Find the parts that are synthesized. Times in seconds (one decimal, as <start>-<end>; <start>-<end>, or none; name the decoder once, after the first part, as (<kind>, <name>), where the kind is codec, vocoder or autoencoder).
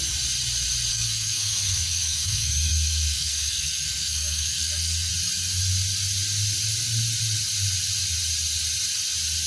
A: 0.9-5.1 (codec, SNAC)